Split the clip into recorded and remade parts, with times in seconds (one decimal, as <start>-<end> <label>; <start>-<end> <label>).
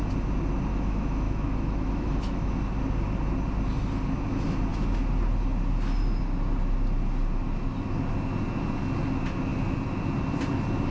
0.0-0.7 recorded; 0.7-2.5 remade; 2.5-10.9 recorded